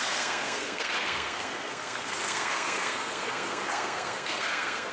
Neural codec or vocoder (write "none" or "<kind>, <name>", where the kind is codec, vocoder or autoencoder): codec, SNAC